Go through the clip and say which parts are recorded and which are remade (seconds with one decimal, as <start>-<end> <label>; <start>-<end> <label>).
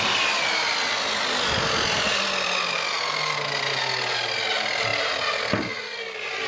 0.0-6.5 recorded